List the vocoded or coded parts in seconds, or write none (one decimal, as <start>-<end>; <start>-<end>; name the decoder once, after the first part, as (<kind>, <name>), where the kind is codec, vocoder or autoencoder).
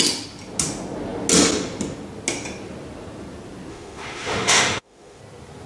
3.7-5.2 (autoencoder, DAC-VAE)